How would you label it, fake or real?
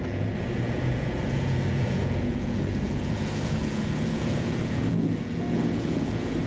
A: fake